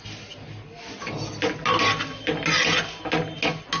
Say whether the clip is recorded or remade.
recorded